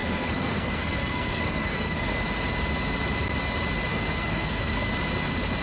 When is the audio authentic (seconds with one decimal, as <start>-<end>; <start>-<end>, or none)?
2.2-3.9; 4.9-5.6